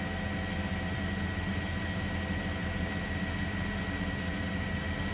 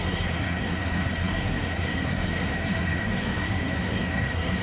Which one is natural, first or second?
first